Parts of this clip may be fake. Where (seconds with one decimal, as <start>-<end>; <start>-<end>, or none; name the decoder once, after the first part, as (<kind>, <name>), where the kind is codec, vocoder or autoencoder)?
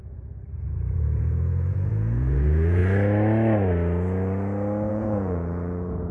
0.0-2.8 (vocoder, Vocos); 4.9-6.1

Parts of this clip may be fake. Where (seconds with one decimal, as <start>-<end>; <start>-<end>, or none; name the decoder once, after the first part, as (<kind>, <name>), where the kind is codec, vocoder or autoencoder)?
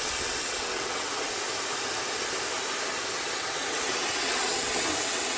0.0-1.1 (vocoder, WaveNeXt); 3.0-5.4